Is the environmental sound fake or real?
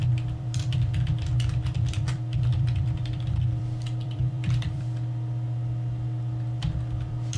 fake